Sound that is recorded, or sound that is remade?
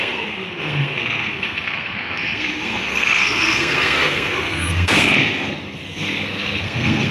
remade